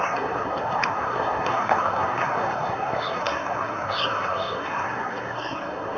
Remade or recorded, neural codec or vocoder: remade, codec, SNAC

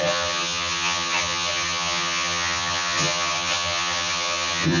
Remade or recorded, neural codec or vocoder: remade, vocoder, HiFi-GAN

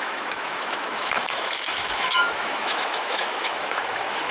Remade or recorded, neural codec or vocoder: remade, autoencoder, DAC-VAE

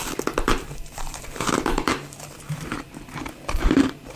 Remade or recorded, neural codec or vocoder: remade, vocoder, BigVGAN v2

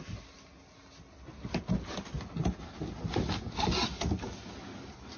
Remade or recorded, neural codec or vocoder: recorded